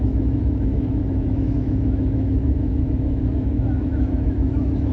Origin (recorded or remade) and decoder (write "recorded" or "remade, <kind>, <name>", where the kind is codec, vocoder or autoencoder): remade, autoencoder, DAC-VAE